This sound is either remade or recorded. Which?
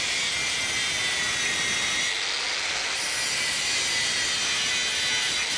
recorded